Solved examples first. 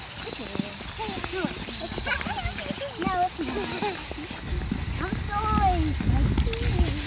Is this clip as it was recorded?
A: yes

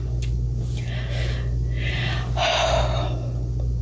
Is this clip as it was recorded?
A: yes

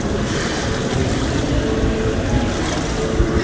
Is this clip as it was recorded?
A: yes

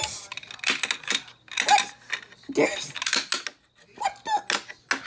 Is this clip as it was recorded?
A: yes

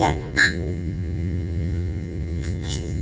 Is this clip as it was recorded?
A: no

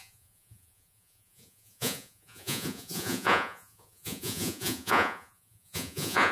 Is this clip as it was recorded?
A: no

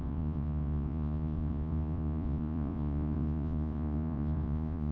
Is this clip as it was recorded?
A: no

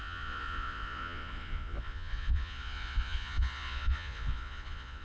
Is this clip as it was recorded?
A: no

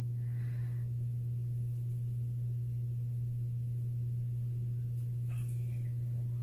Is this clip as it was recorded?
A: yes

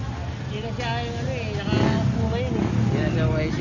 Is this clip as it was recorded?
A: yes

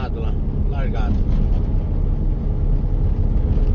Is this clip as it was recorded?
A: yes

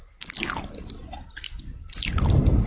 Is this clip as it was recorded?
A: yes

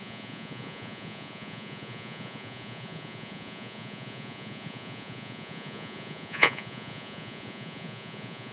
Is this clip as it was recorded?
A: no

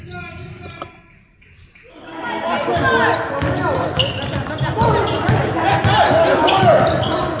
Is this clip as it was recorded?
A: yes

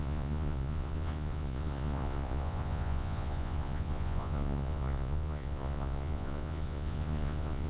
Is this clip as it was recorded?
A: no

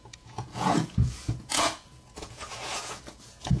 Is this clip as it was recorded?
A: no